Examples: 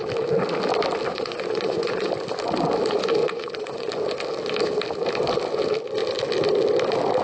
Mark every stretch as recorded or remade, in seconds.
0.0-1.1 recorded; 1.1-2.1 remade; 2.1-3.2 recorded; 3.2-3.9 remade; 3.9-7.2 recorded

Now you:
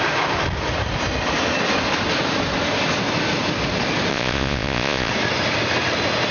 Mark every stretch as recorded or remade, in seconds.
0.0-4.1 recorded; 4.1-5.1 remade; 5.1-6.3 recorded

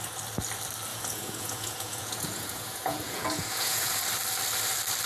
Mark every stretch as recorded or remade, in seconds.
0.0-0.9 recorded; 0.9-4.0 remade; 4.0-5.1 recorded

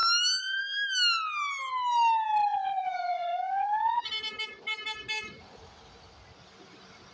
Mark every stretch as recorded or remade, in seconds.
0.0-2.5 recorded; 2.5-4.1 remade; 4.1-7.1 recorded

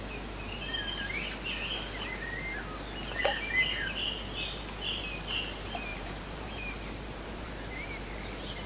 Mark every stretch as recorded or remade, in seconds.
0.0-5.9 recorded; 5.9-8.1 remade; 8.1-8.7 recorded